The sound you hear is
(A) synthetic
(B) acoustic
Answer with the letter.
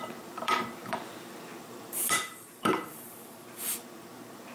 A